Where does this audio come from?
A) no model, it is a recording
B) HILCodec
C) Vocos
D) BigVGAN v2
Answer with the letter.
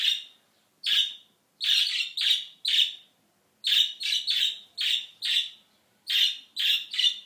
A